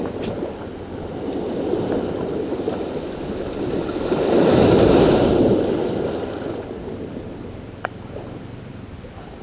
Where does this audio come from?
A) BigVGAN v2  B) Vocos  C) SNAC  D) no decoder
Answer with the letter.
D